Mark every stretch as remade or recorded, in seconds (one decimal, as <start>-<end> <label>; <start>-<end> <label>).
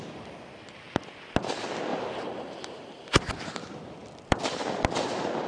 0.0-1.9 recorded; 1.9-3.3 remade; 3.3-5.5 recorded